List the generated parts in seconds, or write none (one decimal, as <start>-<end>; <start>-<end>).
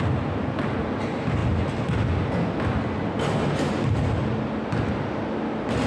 none